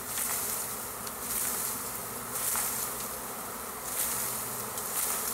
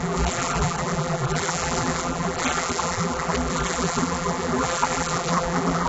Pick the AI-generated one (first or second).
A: second